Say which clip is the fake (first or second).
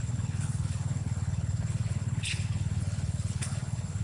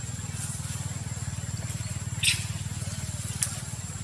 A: first